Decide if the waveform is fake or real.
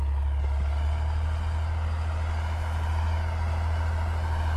real